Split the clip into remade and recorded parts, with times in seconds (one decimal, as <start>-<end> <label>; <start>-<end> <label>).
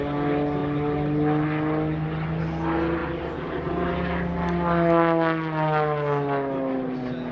0.0-7.3 recorded